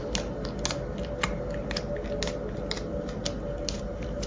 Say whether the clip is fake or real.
real